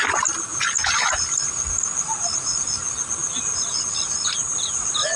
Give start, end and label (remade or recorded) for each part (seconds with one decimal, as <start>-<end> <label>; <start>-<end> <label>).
0.0-5.2 recorded